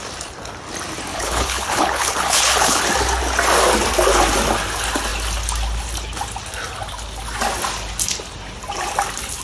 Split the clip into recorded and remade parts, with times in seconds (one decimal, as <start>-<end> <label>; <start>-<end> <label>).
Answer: 0.0-1.1 recorded; 1.1-2.8 remade; 2.8-9.4 recorded